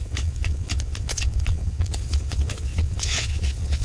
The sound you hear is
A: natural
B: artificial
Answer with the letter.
B